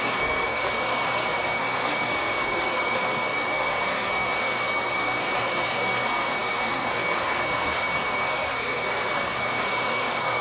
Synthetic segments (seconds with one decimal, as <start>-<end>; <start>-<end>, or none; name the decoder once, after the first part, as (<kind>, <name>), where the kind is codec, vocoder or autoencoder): 0.0-10.4 (codec, SNAC)